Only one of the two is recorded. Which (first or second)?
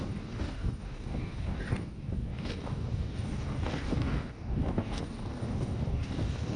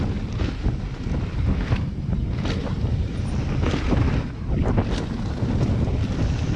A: second